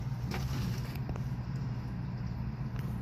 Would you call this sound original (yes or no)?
yes